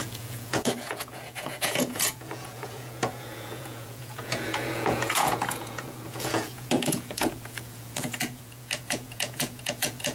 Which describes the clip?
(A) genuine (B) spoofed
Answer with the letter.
B